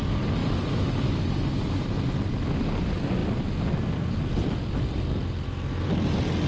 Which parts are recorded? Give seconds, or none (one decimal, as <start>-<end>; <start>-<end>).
0.0-6.5